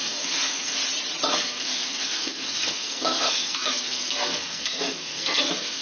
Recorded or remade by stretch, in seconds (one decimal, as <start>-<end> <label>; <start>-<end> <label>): 0.0-0.8 remade; 0.8-1.3 recorded; 1.3-5.8 remade